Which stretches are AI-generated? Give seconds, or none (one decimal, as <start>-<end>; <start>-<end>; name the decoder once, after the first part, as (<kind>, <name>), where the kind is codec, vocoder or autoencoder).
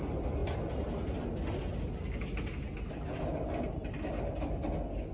none